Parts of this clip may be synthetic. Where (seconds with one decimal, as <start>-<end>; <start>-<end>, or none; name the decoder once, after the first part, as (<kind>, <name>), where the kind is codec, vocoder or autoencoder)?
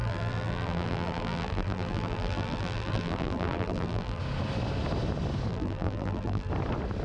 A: 0.0-4.2 (vocoder, BigVGAN v2); 5.5-6.5